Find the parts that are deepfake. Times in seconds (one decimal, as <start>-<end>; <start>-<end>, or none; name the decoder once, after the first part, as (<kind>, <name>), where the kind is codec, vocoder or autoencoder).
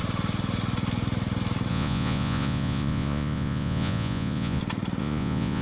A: 1.7-4.6 (vocoder, Vocos); 5.0-5.6